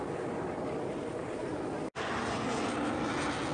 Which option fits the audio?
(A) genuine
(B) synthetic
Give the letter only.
A